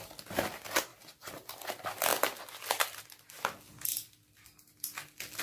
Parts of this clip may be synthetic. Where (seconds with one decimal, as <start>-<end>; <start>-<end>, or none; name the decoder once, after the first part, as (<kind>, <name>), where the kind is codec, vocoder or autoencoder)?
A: none